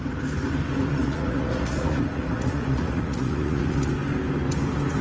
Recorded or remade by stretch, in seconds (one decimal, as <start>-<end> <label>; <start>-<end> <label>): 0.0-0.9 recorded; 0.9-3.9 remade; 3.9-5.0 recorded